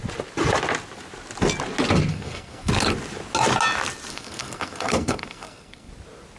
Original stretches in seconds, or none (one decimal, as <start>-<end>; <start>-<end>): 0.0-2.1; 2.7-4.1; 5.9-6.4